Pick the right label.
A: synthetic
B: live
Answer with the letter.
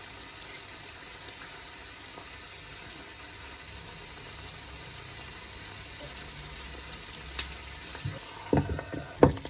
B